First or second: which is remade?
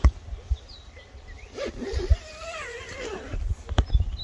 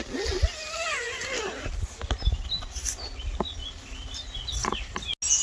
first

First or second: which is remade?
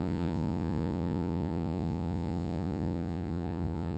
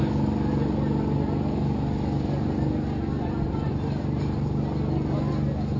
first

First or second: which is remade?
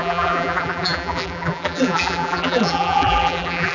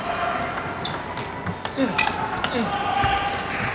first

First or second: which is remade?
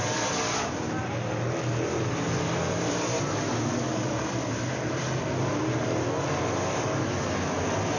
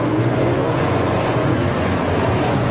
second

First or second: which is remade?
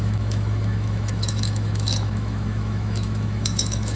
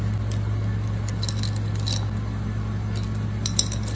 first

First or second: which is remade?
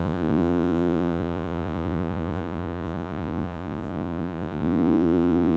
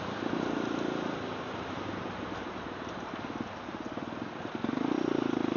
first